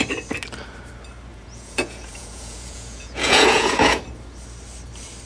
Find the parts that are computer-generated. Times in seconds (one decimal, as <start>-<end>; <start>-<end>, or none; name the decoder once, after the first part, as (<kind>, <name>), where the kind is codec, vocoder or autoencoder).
1.3-4.0 (vocoder, Vocos)

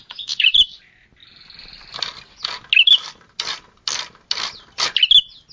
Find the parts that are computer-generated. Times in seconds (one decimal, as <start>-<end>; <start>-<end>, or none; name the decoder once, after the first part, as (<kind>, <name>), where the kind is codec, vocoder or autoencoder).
0.0-0.6 (vocoder, Vocos)

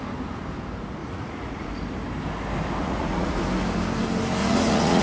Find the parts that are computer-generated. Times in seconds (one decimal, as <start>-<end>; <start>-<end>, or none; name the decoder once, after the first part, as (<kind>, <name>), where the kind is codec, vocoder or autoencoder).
1.0-1.7 (vocoder, Vocos); 2.8-3.4; 4.4-5.0